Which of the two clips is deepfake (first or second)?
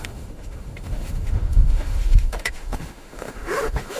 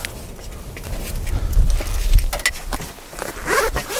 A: first